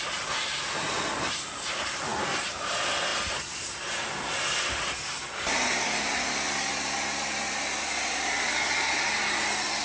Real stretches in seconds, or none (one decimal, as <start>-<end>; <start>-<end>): 0.0-9.8